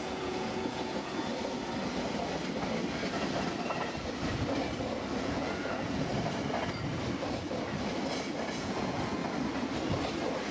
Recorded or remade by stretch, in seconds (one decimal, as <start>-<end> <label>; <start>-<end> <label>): 0.0-1.3 remade; 1.3-5.2 recorded; 5.2-6.1 remade; 6.1-8.5 recorded; 8.5-9.2 remade; 9.2-10.5 recorded